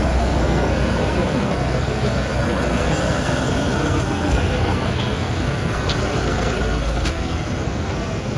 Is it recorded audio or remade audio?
remade